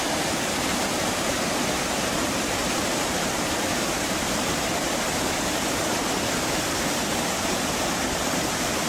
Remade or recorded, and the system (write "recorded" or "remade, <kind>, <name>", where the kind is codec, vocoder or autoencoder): remade, vocoder, BigVGAN v2